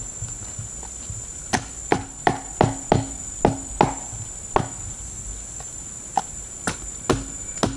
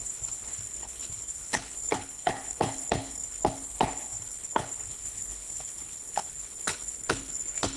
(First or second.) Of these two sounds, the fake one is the second